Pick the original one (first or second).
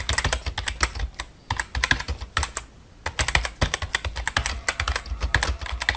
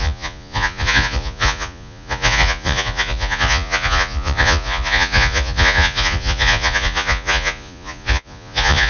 first